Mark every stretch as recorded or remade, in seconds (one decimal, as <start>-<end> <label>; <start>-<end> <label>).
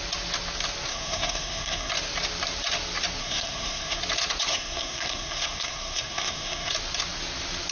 0.0-0.9 recorded; 0.9-1.9 remade; 1.9-3.2 recorded; 3.2-4.0 remade; 4.0-4.5 recorded; 4.5-6.7 remade; 6.7-7.7 recorded